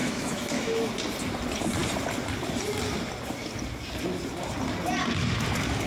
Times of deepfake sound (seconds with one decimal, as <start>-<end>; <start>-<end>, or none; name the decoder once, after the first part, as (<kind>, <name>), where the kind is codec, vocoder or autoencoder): 0.0-0.9 (autoencoder, DAC-VAE)